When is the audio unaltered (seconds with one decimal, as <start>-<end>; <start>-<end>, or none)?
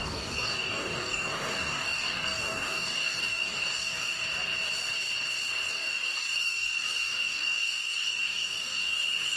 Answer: 4.2-5.7